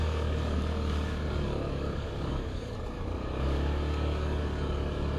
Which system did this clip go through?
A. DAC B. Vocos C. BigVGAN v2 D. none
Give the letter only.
A